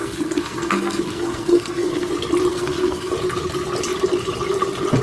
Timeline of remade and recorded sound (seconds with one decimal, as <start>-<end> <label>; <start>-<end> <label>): 0.0-2.1 remade; 2.1-2.5 recorded; 2.5-3.1 remade; 3.1-5.0 recorded